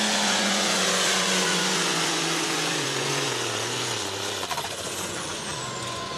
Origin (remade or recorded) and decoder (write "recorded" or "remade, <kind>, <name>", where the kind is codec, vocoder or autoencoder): remade, vocoder, Vocos